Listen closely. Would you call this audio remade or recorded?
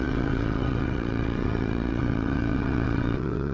remade